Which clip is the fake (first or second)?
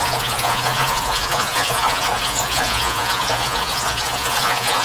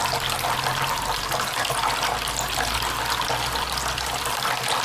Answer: first